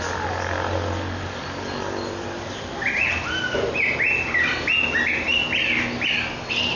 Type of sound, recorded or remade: recorded